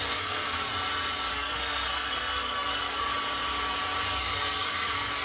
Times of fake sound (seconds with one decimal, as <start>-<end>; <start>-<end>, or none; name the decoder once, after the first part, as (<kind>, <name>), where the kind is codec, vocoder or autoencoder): 0.0-0.7 (codec, SNAC); 1.3-3.1; 4.2-5.2